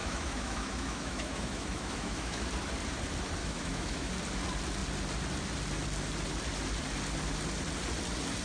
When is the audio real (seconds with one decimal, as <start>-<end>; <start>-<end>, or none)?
2.5-3.4; 4.1-8.4